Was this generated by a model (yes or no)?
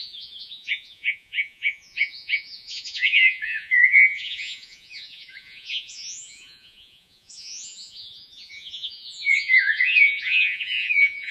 yes